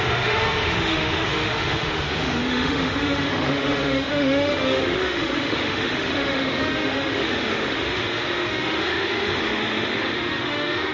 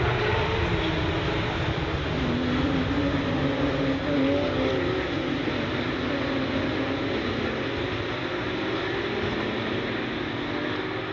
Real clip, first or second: second